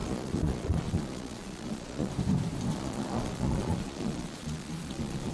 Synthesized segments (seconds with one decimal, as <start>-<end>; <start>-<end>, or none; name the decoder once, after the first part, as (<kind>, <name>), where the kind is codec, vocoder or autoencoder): 0.0-2.1 (vocoder, Vocos); 2.7-5.3